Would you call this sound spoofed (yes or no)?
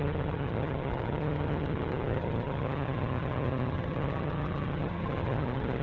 yes